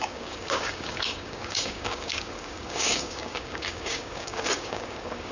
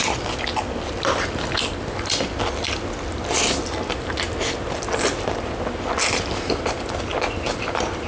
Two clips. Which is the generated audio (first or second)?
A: first